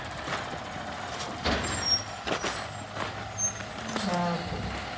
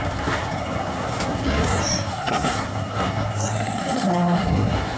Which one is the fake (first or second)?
second